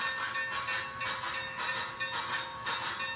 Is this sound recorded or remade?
recorded